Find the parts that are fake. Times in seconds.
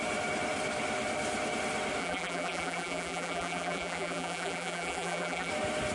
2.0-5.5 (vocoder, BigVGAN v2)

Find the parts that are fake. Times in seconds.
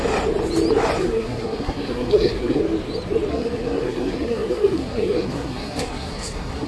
1.0-2.6 (codec, SNAC); 3.3-6.7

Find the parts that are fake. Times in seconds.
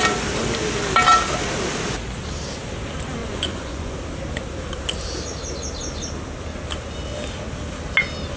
3.2-3.9 (vocoder, Vocos)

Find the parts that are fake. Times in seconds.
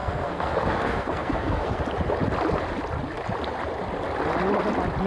0.0-1.8 (codec, SNAC)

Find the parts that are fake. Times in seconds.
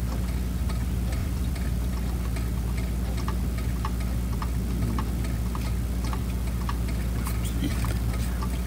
1.2-1.9 (vocoder, BigVGAN v2)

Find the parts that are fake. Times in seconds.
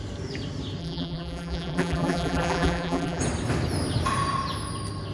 0.8-3.2 (vocoder, BigVGAN v2)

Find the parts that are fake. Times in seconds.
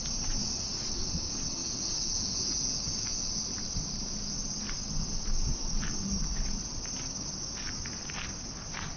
1.6-3.4 (vocoder, Vocos)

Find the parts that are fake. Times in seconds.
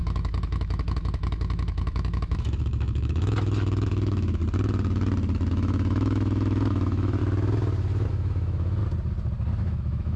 0.0-4.4 (autoencoder, DAC-VAE); 5.5-7.2; 8.1-8.8; 9.6-10.2